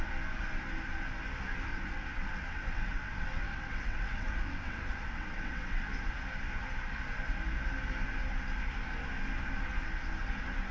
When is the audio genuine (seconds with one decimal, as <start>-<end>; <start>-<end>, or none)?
0.0-1.7; 5.9-10.7